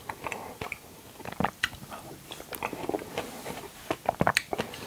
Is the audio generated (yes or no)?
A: yes